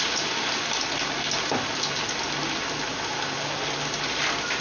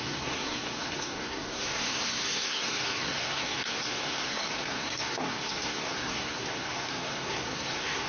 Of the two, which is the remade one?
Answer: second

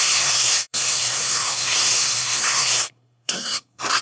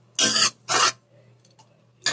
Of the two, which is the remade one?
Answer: first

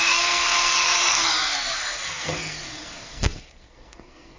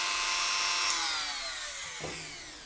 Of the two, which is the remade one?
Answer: first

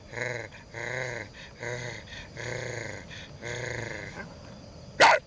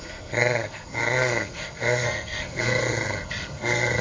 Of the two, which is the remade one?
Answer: second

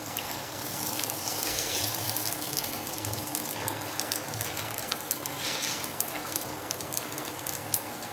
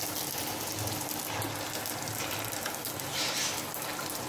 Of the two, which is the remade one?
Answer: first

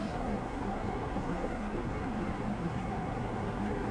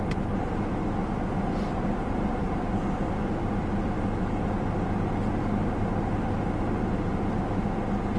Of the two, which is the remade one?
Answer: first